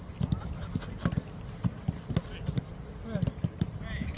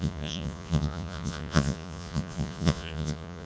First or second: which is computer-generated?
second